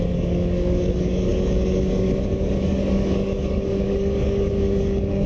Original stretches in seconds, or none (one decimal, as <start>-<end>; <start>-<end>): none